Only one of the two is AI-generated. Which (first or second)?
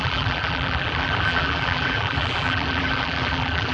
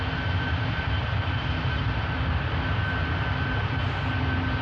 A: first